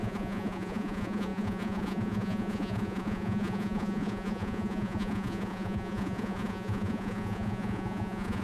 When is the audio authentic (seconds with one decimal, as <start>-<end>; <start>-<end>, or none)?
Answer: none